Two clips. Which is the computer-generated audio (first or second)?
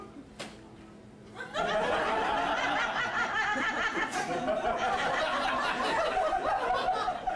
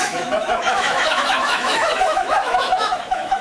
second